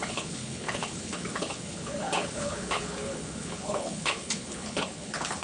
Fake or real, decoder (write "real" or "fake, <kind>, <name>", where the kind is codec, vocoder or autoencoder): fake, codec, HILCodec